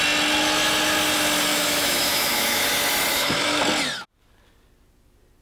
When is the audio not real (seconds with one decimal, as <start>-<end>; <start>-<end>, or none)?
1.5-2.6; 3.1-3.6